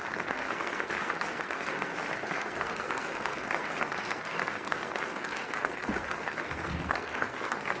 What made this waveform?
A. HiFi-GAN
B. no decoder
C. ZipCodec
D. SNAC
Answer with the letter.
D